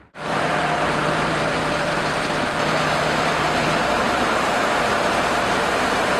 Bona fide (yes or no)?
no